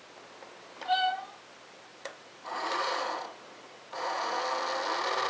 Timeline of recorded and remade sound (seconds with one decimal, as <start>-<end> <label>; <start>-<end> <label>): 0.0-1.9 recorded; 1.9-4.4 remade; 4.4-5.3 recorded